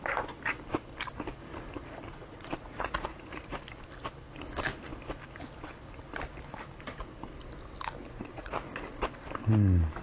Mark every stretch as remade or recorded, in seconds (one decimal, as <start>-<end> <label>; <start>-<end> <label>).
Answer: 0.0-2.2 recorded; 2.2-3.6 remade; 3.6-8.3 recorded; 8.3-8.9 remade; 8.9-10.0 recorded